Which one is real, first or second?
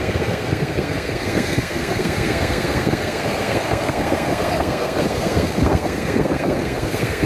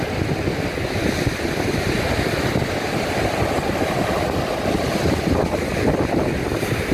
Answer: second